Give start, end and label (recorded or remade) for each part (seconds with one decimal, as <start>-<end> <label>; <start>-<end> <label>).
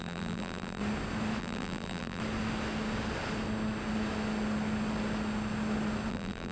0.0-0.8 remade; 0.8-1.4 recorded; 1.4-2.2 remade; 2.2-6.1 recorded; 6.1-6.5 remade